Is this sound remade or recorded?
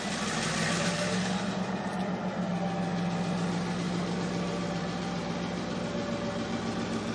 recorded